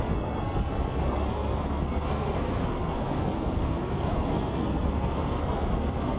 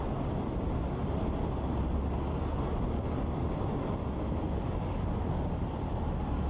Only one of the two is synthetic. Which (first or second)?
first